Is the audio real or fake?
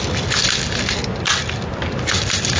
real